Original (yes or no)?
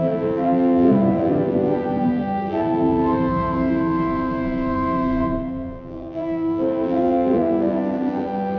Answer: no